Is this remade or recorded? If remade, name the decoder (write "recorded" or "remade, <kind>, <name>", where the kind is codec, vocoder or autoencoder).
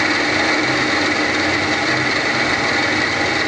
recorded